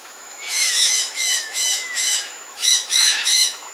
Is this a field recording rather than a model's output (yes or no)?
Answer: no